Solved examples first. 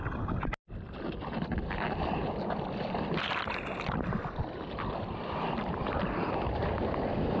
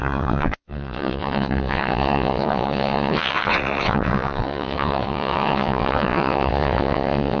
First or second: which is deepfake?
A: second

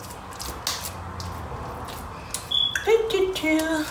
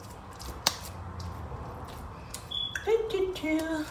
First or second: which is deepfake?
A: second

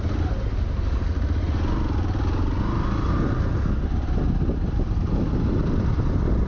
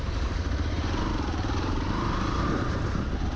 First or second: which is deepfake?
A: second